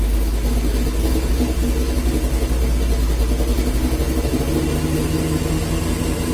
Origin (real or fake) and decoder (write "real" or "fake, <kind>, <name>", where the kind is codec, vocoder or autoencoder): real